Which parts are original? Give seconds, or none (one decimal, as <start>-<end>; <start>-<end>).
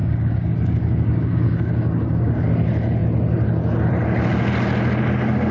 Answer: 2.4-5.5